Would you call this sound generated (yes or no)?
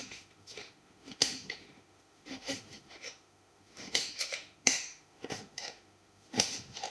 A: yes